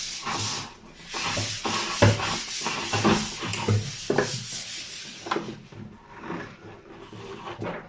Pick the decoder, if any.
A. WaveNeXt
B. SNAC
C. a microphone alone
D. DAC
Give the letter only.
C